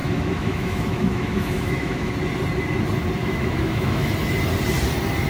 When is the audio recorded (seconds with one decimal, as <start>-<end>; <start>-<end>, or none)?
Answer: 2.1-3.2; 4.1-5.3